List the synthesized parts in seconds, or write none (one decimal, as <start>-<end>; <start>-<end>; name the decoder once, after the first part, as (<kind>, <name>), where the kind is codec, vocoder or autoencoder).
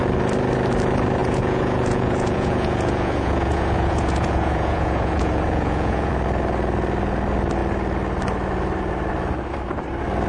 1.2-6.1 (vocoder, Vocos)